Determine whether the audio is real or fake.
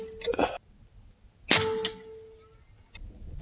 real